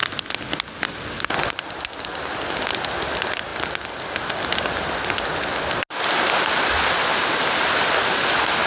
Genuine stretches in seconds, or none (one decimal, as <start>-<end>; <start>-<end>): 0.0-8.7